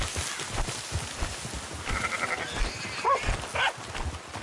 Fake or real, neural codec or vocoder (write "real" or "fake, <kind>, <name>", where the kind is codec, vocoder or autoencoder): real